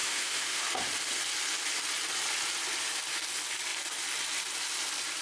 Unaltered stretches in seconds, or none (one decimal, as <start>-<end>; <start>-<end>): 0.6-5.2